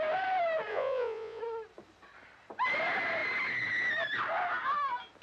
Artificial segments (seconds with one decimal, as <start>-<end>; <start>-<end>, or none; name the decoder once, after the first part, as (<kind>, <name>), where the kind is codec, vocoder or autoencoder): 0.7-1.4 (vocoder, Vocos)